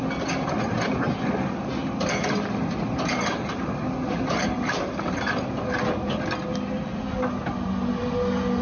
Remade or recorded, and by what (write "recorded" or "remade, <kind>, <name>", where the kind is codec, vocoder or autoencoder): recorded